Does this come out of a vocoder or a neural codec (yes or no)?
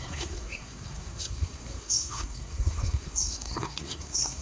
yes